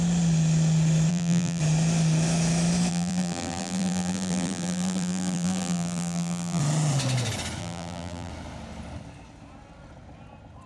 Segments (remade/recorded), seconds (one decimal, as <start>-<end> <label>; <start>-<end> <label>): 0.0-1.1 recorded; 1.1-1.6 remade; 1.6-2.9 recorded; 2.9-6.6 remade; 6.6-7.6 recorded; 7.6-8.3 remade; 8.3-10.7 recorded